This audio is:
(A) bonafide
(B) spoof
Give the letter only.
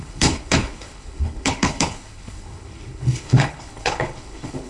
B